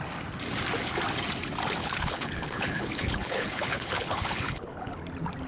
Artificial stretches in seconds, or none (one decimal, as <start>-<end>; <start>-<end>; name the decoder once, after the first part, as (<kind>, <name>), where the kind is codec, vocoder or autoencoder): 1.8-4.9 (codec, HILCodec)